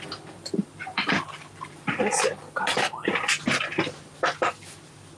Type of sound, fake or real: real